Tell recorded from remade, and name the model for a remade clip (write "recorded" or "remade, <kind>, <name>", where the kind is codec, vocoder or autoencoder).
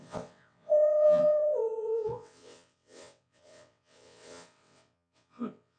remade, vocoder, WaveNeXt